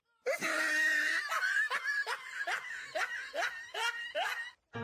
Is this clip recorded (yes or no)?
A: yes